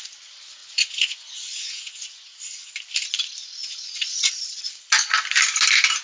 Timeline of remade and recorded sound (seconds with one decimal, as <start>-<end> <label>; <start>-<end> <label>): 0.0-0.6 recorded; 0.6-2.7 remade; 2.7-3.6 recorded; 3.6-4.3 remade; 4.3-6.0 recorded